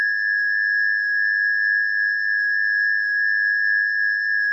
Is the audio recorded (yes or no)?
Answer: yes